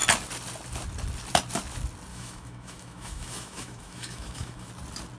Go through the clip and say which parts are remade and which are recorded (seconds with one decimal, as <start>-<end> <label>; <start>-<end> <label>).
0.0-2.1 recorded; 2.1-4.7 remade; 4.7-5.2 recorded